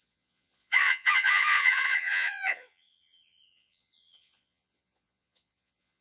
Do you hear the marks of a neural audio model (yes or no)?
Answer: yes